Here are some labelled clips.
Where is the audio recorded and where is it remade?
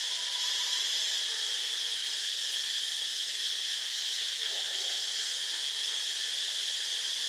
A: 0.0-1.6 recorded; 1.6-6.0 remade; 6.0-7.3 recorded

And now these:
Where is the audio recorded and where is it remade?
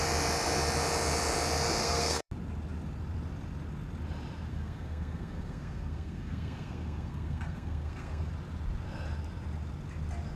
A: 0.0-1.8 recorded; 1.8-2.3 remade; 2.3-4.5 recorded; 4.5-8.3 remade; 8.3-10.4 recorded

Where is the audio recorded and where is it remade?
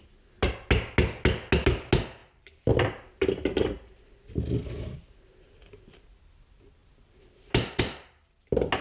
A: 0.0-8.8 recorded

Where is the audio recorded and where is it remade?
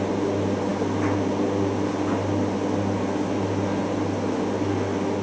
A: 0.0-5.2 recorded